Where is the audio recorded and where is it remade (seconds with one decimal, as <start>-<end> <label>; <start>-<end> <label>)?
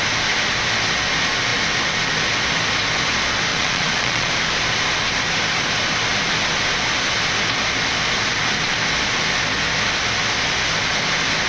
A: 0.0-3.5 recorded; 3.5-4.3 remade; 4.3-11.5 recorded